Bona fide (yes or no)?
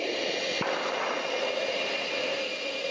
yes